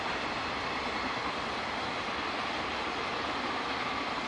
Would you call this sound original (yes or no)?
yes